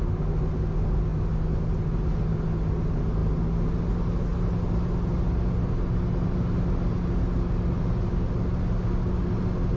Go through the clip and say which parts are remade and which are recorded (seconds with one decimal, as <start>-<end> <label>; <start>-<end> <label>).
0.0-9.8 recorded